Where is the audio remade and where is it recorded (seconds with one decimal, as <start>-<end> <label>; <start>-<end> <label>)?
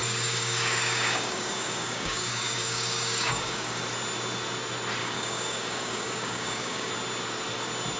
0.0-3.8 remade; 3.8-5.0 recorded; 5.0-6.9 remade; 6.9-8.0 recorded